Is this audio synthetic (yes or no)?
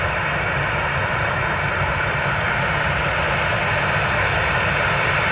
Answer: no